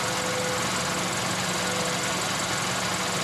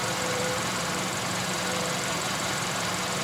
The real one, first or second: first